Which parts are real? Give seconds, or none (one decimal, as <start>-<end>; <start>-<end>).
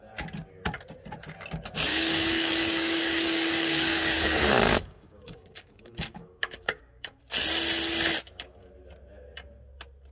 0.0-1.9; 7.2-10.1